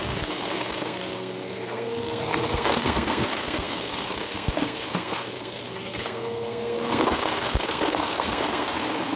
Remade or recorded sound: remade